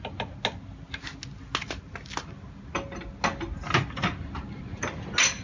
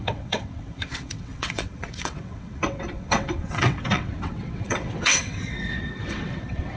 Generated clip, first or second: second